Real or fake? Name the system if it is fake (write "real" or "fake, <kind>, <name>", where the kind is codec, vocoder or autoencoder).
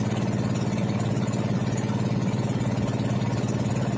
real